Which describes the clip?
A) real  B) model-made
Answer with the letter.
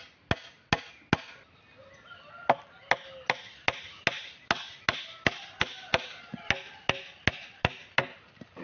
A